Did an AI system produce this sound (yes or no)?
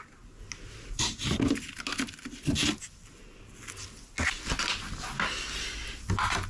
no